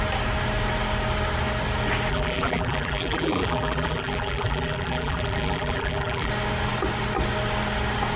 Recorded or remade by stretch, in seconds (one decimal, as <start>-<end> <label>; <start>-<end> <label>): 0.0-2.1 recorded; 2.1-6.3 remade; 6.3-8.2 recorded